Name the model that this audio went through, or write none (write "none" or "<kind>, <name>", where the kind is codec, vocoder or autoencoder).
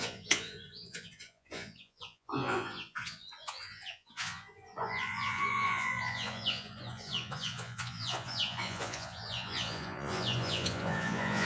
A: vocoder, Vocos